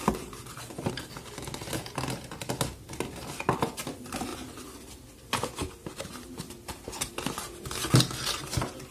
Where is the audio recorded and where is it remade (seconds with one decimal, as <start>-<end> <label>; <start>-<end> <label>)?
0.0-8.9 recorded